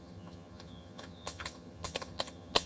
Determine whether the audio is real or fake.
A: fake